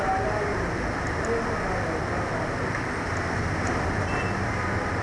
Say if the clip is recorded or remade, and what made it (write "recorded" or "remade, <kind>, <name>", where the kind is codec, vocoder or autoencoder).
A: recorded